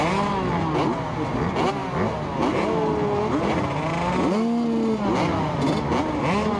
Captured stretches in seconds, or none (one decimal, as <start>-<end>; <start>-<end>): 0.0-6.6